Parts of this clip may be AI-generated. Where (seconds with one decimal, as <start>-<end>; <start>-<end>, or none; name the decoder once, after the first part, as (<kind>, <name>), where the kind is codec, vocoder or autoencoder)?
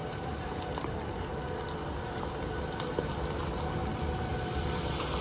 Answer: 0.0-3.1 (vocoder, BigVGAN v2)